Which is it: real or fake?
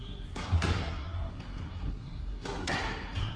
fake